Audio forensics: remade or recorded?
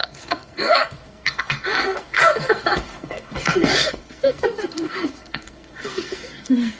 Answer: remade